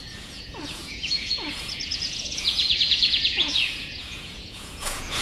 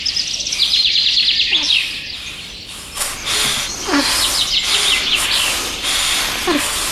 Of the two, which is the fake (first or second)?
first